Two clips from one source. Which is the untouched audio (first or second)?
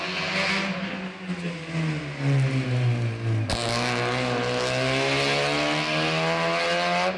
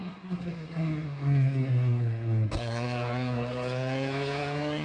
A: first